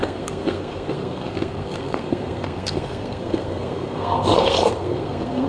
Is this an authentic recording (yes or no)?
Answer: no